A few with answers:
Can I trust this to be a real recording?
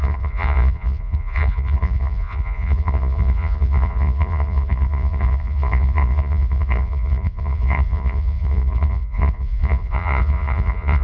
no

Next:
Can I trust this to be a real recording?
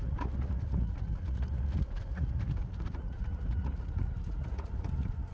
no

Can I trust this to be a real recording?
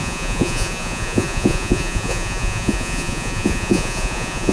no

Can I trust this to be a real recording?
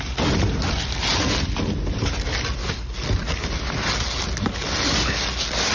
yes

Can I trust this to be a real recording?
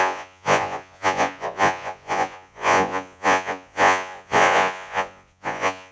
no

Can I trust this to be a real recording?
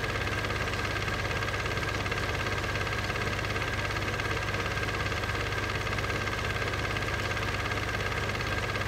yes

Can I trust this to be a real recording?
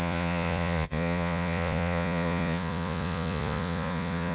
no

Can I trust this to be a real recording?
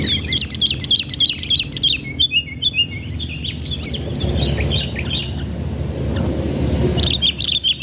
yes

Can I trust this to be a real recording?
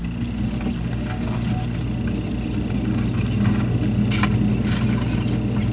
yes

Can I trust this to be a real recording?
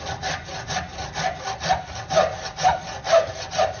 yes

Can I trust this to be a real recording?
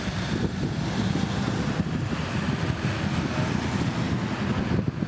yes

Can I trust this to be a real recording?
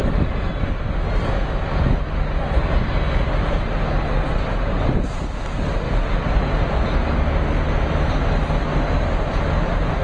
yes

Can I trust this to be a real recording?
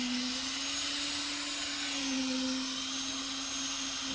yes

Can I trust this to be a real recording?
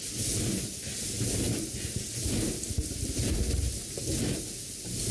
yes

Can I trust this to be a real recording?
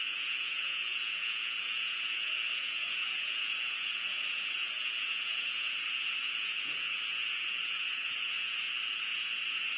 no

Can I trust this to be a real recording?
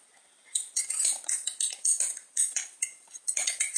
no